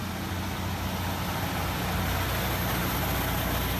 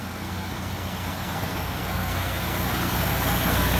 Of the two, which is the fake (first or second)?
second